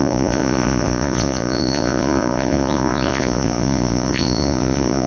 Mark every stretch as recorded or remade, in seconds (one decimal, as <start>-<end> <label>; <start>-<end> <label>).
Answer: 0.0-5.1 remade